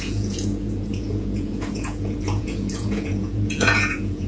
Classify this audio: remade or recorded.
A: remade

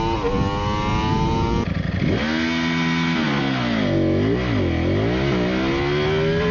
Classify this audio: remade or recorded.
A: recorded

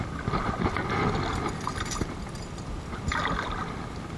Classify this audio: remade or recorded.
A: recorded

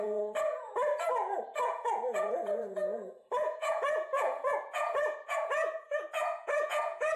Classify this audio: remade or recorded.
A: remade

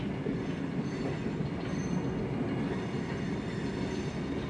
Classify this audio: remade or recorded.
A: recorded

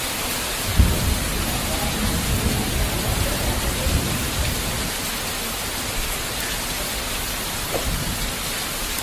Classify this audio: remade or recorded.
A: recorded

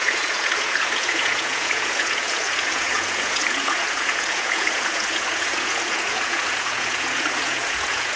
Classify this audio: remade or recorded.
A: remade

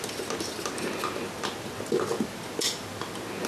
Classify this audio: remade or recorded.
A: recorded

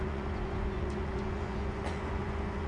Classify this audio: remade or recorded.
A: remade